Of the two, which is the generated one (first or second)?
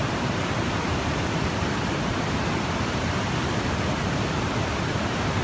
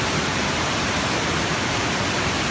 first